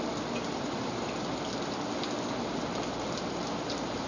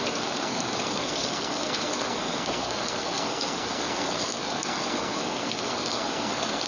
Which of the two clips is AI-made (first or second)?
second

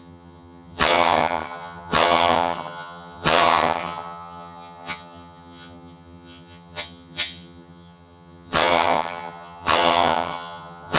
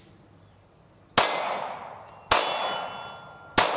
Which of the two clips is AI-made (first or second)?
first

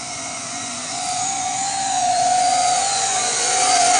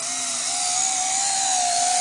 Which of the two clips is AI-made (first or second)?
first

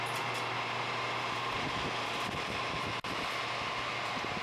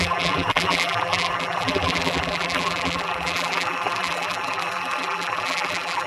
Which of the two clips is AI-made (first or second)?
second